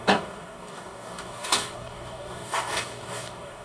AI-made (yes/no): yes